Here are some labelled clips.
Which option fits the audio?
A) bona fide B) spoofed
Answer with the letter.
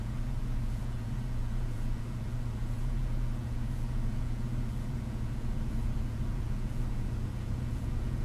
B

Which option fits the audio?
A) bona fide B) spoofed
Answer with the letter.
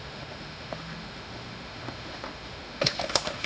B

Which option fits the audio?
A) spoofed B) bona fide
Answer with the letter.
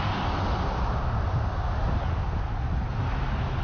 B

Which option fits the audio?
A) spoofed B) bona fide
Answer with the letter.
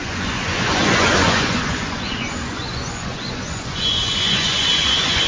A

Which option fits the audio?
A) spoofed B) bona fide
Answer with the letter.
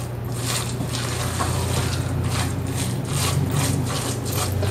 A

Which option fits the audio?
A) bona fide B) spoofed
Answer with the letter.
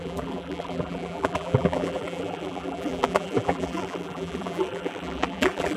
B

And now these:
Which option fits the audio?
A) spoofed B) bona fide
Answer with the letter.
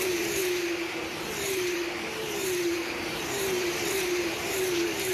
A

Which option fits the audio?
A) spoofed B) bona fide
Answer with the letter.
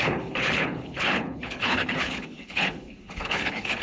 A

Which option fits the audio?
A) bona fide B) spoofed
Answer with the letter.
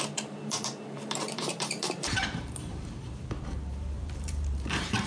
B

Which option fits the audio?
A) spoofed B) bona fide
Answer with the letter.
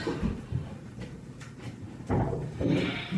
A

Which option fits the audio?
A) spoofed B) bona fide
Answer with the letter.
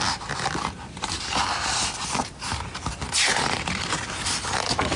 A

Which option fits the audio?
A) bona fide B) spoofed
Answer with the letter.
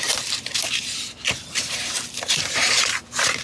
B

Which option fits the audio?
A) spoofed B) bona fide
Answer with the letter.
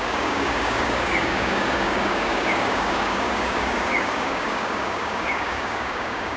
A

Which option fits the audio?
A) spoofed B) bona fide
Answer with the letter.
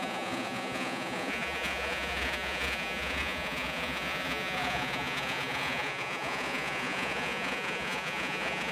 A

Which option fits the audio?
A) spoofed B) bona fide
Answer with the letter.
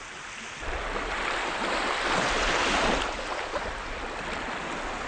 B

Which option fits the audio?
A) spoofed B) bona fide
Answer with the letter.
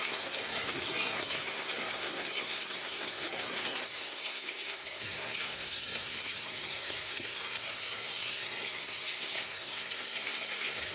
A